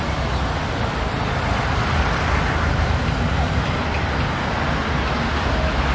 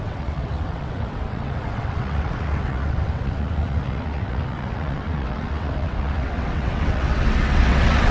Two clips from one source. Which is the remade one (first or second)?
second